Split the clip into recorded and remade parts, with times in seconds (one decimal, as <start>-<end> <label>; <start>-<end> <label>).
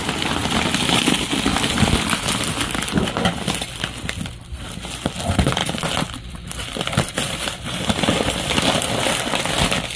0.0-1.5 recorded; 1.5-2.1 remade; 2.1-5.6 recorded; 5.6-8.5 remade; 8.5-10.0 recorded